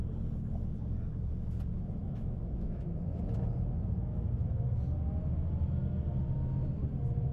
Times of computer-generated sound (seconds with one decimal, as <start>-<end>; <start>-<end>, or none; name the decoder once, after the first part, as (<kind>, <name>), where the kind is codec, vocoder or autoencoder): 2.0-3.2 (autoencoder, DAC-VAE)